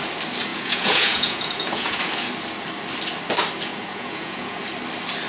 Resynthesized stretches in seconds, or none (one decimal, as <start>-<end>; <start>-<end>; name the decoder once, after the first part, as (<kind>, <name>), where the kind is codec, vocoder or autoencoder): 0.5-2.0 (vocoder, Vocos); 3.7-4.6